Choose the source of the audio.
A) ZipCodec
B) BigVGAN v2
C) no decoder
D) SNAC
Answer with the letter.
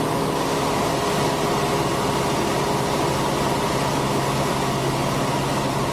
C